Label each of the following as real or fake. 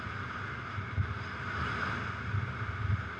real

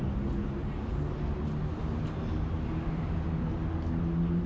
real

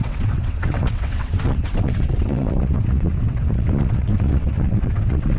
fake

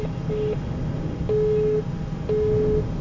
real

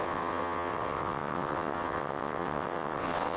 fake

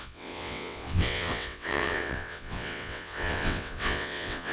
fake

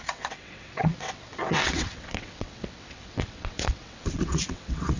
fake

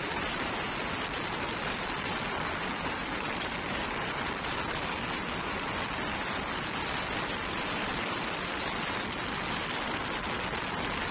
real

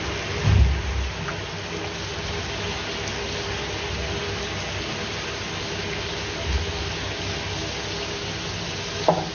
real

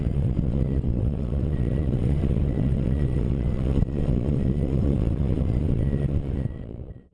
fake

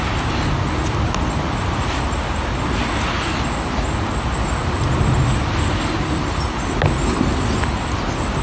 real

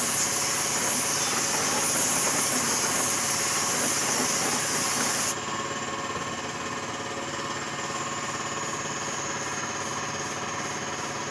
real